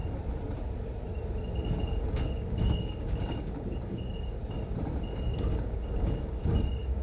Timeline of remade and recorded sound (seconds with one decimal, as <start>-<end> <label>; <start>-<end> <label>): 0.0-1.9 recorded; 1.9-4.4 remade; 4.4-5.1 recorded; 5.1-7.0 remade